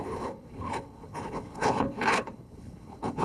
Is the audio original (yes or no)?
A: no